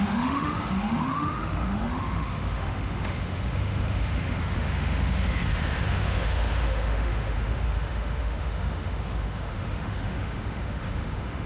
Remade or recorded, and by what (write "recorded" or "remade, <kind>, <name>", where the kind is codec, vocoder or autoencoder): remade, autoencoder, DAC-VAE